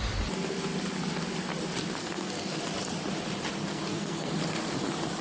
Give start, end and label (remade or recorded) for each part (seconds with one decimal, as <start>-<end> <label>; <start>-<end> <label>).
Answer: 0.0-2.0 recorded; 2.0-2.6 remade; 2.6-3.6 recorded; 3.6-4.3 remade; 4.3-5.2 recorded